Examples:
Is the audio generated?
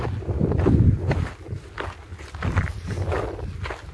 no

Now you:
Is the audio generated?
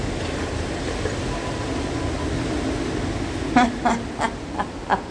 no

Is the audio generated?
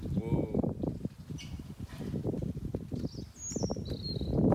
no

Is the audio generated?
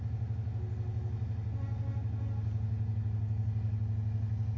no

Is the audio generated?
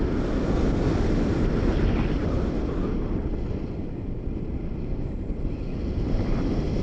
no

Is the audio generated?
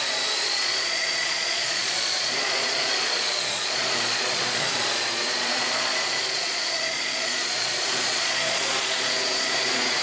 yes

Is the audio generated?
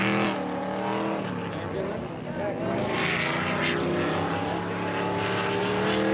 no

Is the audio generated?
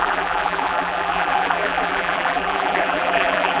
yes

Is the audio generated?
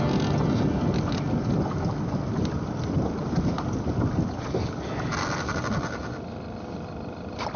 no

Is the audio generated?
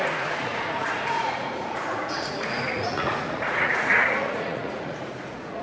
yes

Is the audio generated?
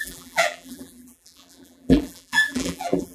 yes